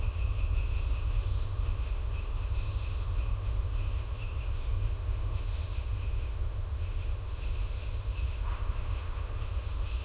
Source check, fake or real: fake